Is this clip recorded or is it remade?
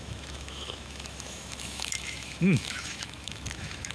remade